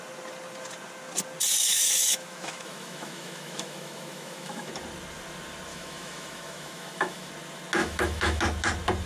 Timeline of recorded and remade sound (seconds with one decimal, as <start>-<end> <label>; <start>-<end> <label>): 0.0-1.6 recorded; 1.6-4.7 remade; 4.7-5.7 recorded; 5.7-7.3 remade; 7.3-7.8 recorded; 7.8-8.4 remade; 8.4-9.1 recorded